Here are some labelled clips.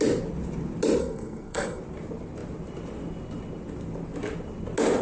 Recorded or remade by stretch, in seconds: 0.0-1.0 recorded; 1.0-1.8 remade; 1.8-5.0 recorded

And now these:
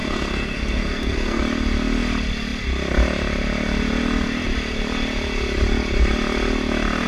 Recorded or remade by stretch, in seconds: 0.0-1.4 remade; 1.4-7.1 recorded

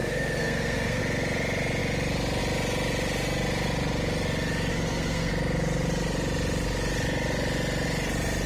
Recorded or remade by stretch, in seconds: 0.0-1.0 remade; 1.0-4.7 recorded; 4.7-5.3 remade; 5.3-8.5 recorded

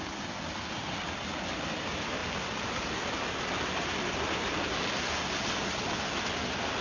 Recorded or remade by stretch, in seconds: 0.0-6.8 recorded

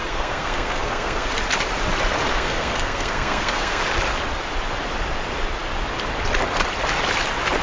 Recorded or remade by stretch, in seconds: 0.0-1.3 remade; 1.3-2.3 recorded; 2.3-3.8 remade; 3.8-7.6 recorded